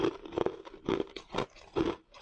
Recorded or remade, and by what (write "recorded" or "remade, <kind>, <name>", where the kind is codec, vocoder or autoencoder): remade, vocoder, BigVGAN v2